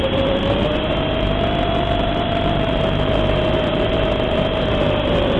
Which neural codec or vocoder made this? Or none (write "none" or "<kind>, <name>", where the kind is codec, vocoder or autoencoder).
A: vocoder, BigVGAN v2